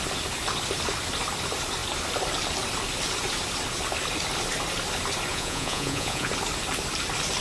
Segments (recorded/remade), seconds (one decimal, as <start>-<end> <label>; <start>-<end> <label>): 0.0-5.3 recorded; 5.3-6.3 remade; 6.3-7.4 recorded